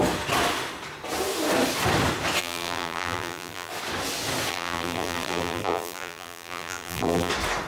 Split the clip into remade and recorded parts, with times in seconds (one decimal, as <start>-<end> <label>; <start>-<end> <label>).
0.0-2.4 recorded; 2.4-3.7 remade; 3.7-4.5 recorded; 4.5-7.3 remade; 7.3-7.7 recorded